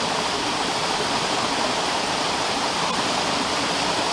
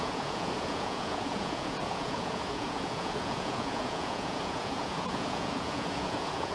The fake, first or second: second